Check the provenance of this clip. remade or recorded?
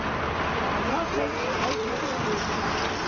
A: remade